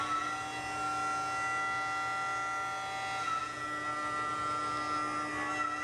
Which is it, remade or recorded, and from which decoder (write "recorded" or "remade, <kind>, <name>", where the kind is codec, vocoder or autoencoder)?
recorded